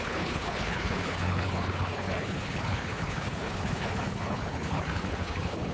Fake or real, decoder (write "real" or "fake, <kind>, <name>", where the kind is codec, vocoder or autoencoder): fake, codec, HILCodec